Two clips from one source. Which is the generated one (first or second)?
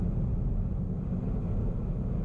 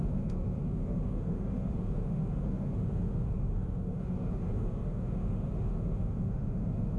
second